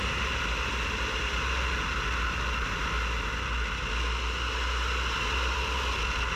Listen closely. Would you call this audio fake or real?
real